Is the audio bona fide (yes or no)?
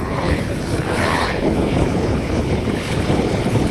no